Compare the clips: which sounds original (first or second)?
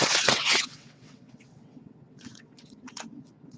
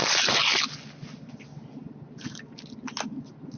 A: second